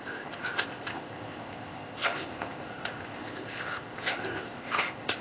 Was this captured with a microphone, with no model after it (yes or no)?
no